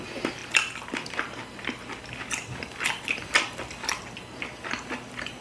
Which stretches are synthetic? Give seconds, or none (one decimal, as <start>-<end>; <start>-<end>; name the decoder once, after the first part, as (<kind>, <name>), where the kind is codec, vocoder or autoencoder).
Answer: 0.0-5.4 (vocoder, BigVGAN v2)